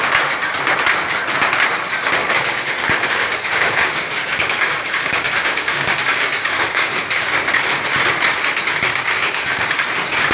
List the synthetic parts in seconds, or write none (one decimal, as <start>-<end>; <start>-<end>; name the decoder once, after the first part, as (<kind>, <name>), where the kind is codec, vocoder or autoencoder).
2.2-7.0 (codec, DAC); 8.9-9.8